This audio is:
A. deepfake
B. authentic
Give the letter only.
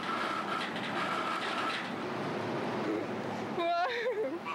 B